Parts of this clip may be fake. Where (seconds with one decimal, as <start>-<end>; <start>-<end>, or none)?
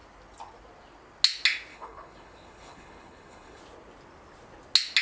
1.7-3.6